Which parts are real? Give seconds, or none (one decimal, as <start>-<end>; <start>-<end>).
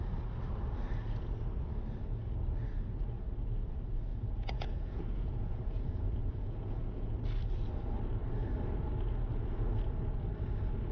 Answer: 0.0-4.1; 7.1-10.9